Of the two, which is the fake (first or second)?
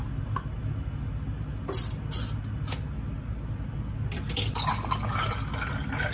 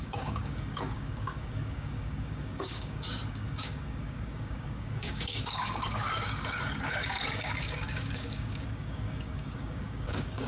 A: second